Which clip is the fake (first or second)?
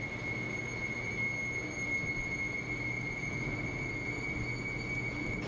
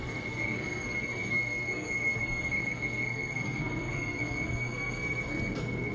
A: second